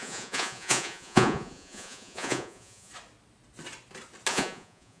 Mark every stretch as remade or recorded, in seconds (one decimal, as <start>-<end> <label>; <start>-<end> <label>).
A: 0.0-2.9 remade; 2.9-4.3 recorded; 4.3-5.0 remade